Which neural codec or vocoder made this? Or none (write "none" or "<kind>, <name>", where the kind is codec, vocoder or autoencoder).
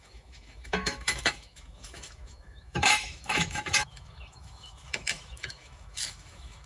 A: autoencoder, DAC-VAE